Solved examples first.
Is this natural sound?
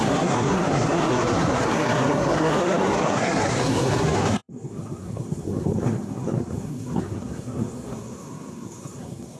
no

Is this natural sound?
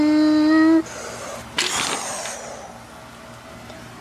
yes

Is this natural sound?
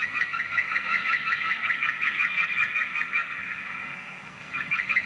no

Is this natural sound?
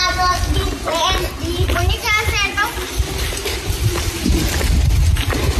yes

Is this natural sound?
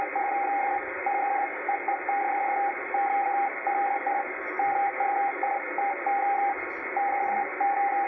yes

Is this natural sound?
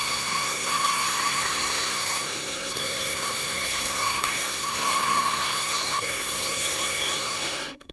no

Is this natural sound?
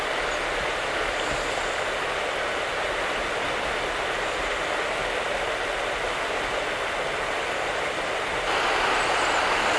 yes